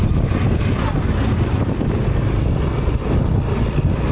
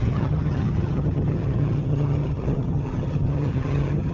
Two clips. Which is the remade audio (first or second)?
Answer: second